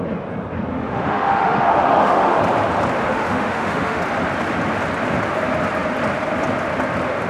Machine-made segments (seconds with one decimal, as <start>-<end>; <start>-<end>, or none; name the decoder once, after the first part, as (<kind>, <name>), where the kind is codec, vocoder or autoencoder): 0.7-2.4 (autoencoder, DAC-VAE); 3.0-4.0